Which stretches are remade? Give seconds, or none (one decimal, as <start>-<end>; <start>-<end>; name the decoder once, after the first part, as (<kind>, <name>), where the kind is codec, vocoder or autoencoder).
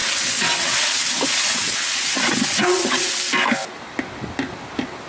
0.0-3.1 (vocoder, WaveNeXt)